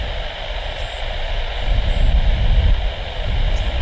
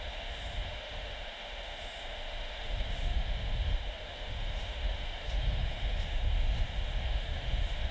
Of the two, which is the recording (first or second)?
first